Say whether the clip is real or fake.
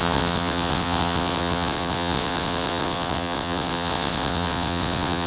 fake